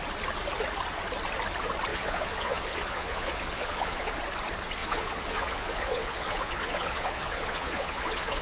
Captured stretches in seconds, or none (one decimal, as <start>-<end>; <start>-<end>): 0.0-1.9; 4.1-4.8